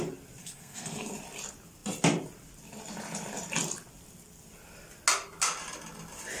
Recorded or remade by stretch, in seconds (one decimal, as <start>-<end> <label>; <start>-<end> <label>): 0.0-0.4 recorded; 0.4-1.1 remade; 1.1-6.4 recorded